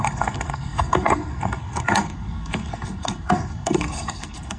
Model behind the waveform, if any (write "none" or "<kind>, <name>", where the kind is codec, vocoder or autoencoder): codec, SNAC